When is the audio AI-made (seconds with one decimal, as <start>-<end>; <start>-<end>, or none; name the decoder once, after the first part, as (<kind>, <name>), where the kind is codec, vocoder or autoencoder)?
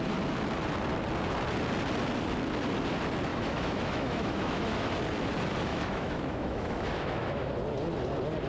3.3-4.9 (autoencoder, DAC-VAE); 5.7-7.5